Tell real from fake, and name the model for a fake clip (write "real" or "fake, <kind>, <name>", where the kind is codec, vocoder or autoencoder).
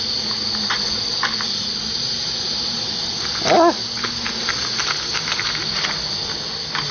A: real